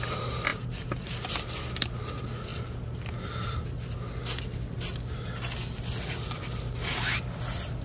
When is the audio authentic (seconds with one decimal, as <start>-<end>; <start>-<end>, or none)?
0.0-7.8